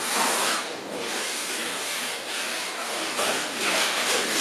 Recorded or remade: remade